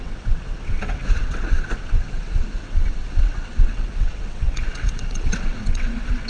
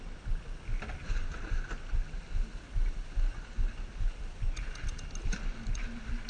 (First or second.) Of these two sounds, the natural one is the second